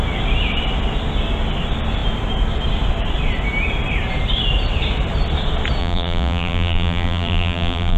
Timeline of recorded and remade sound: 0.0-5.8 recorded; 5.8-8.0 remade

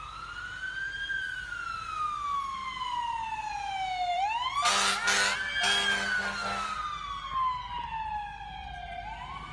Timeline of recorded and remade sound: 0.0-9.5 recorded

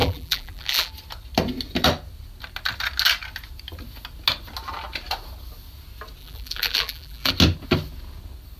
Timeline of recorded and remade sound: 0.0-0.9 remade; 0.9-6.2 recorded; 6.2-7.3 remade; 7.3-8.6 recorded

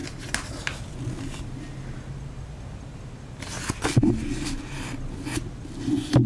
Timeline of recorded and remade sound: 0.0-6.3 recorded

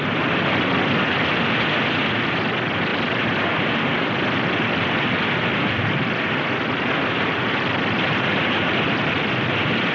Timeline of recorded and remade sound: 0.0-9.9 remade